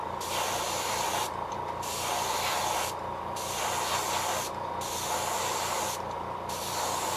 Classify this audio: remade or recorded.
remade